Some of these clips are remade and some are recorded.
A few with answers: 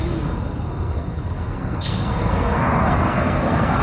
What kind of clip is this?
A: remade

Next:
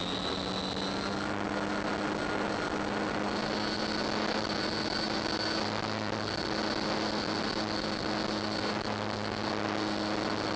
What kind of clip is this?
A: recorded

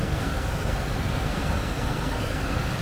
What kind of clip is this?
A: remade